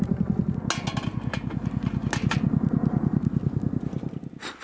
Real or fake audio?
real